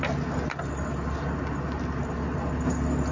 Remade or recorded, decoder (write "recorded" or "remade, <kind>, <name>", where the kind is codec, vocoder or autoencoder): recorded